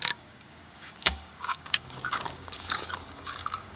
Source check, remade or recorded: remade